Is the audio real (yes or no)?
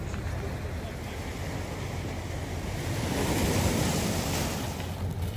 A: yes